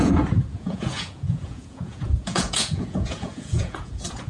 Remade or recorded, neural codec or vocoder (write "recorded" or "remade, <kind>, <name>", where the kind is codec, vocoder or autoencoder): remade, vocoder, Vocos